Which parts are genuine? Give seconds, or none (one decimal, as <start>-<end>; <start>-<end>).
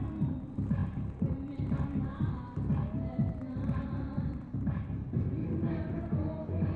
0.0-6.8